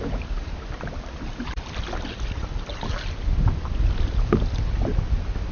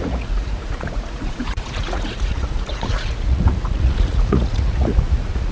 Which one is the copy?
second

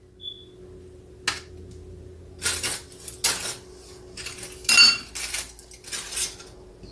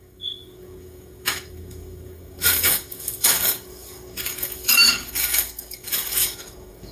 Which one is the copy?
second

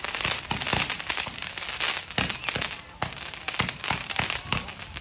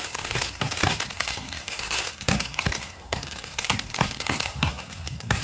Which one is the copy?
second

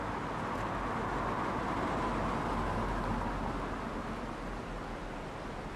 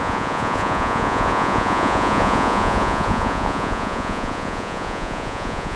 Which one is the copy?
second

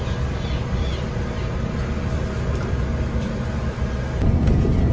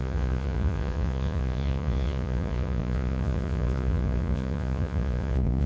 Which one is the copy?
second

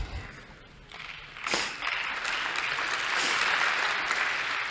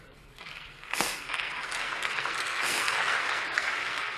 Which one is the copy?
second